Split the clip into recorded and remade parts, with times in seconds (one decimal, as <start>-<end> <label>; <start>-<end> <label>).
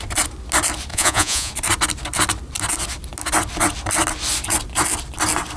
0.0-0.9 recorded; 0.9-1.5 remade; 1.5-5.6 recorded